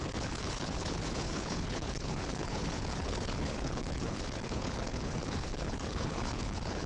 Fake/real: fake